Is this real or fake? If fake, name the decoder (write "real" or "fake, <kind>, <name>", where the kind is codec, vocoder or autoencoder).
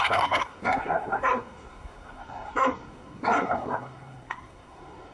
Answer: fake, codec, SNAC